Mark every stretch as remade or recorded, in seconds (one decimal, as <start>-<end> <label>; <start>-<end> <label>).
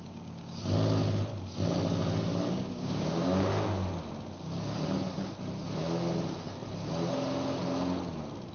0.0-0.6 remade; 0.6-2.5 recorded; 2.5-3.5 remade; 3.5-8.5 recorded